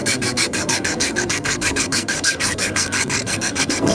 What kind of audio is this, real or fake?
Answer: fake